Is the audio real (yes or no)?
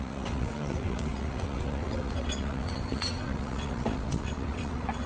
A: no